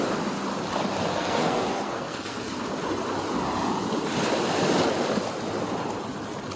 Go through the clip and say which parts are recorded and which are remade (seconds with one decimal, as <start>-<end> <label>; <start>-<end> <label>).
0.0-1.1 recorded; 1.1-2.4 remade; 2.4-6.6 recorded